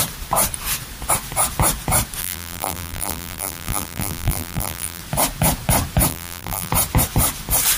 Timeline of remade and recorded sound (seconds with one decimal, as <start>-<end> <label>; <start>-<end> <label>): 0.0-2.2 recorded; 2.2-5.0 remade; 5.0-6.1 recorded; 6.1-6.7 remade; 6.7-7.8 recorded